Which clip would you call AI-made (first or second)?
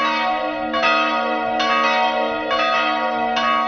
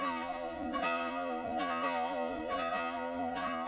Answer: second